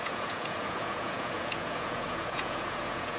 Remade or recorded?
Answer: remade